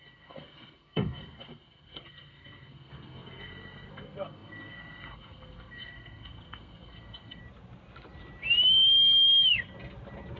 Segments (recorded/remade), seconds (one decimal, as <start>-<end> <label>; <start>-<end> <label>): 0.0-7.4 remade; 7.4-10.4 recorded